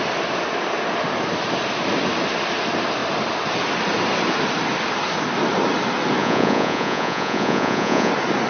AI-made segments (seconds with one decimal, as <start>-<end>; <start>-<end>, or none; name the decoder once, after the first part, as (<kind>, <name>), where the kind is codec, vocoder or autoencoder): 6.2-8.1 (vocoder, Vocos)